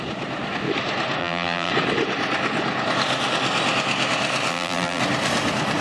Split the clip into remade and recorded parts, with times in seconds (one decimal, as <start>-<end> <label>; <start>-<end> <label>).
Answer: 0.0-1.2 recorded; 1.2-1.7 remade; 1.7-4.5 recorded; 4.5-5.0 remade; 5.0-5.8 recorded